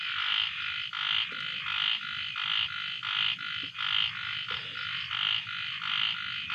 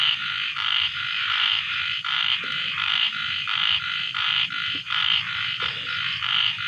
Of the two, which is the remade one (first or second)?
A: second